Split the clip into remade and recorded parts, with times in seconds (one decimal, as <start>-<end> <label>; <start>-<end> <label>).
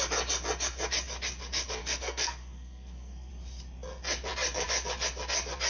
0.0-1.8 recorded; 1.8-3.3 remade; 3.3-5.7 recorded